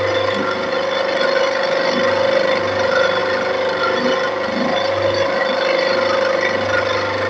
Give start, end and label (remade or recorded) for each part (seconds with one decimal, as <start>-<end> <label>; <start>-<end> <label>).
0.0-7.3 recorded